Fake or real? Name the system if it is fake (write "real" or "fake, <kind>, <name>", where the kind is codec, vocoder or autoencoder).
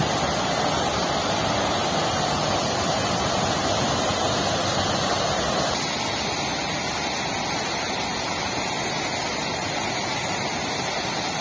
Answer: real